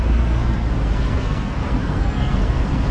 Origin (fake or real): fake